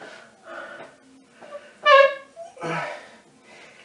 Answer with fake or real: real